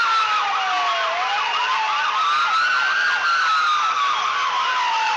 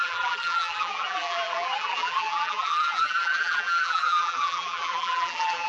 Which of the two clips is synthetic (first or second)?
second